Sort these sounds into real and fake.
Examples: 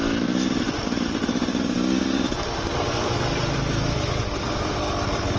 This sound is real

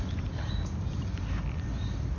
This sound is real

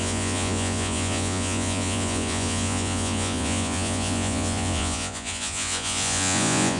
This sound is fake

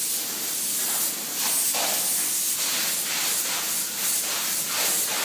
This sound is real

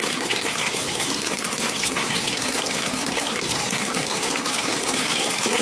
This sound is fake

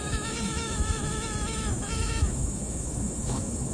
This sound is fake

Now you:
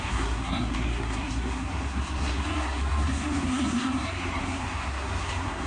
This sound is fake